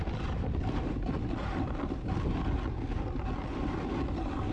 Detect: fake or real real